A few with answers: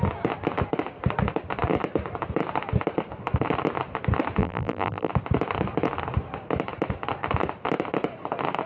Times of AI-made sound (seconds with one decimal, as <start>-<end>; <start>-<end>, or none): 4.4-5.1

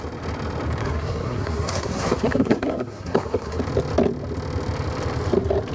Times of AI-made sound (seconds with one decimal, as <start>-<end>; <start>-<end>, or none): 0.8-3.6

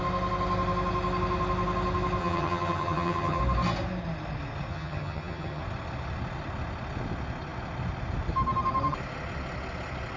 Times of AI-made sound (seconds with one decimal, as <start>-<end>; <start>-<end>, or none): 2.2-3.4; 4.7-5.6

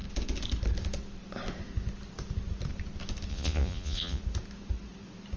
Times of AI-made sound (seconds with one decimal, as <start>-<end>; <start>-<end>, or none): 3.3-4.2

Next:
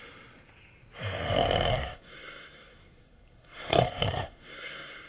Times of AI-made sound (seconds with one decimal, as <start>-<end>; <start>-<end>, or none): 1.7-5.1

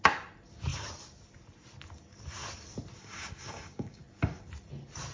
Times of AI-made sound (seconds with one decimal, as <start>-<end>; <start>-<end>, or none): 3.0-4.0

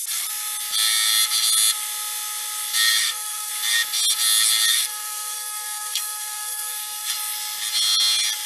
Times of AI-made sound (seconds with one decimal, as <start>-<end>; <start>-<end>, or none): 3.0-3.5; 4.7-7.1